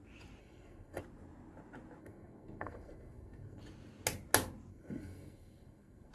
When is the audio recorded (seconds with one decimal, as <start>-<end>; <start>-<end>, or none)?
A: 0.0-0.4; 1.0-2.0; 3.6-4.7